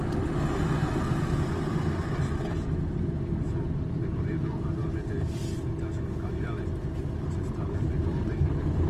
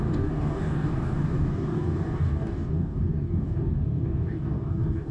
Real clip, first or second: first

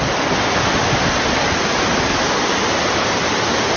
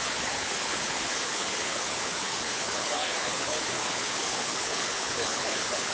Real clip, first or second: first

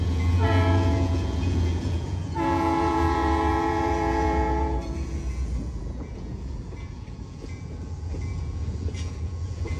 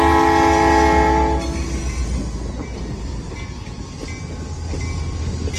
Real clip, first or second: second